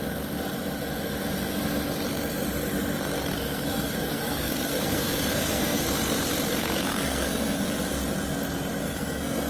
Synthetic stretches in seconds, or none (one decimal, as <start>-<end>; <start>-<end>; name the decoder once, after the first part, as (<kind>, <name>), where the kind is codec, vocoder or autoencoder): 3.3-5.8 (codec, SNAC); 6.9-7.6; 8.8-9.5